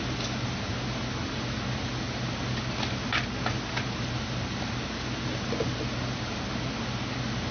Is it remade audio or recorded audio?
recorded